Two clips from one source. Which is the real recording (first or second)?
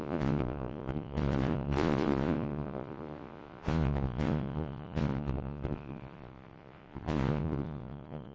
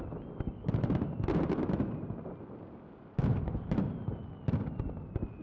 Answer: second